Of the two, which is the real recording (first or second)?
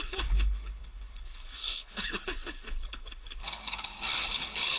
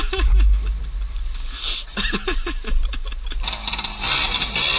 second